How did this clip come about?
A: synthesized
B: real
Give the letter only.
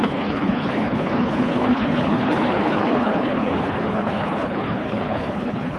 A